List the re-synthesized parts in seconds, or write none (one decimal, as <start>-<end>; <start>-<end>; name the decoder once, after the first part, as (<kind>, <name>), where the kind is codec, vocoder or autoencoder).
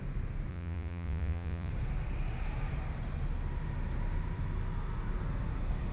0.5-1.7 (vocoder, Vocos)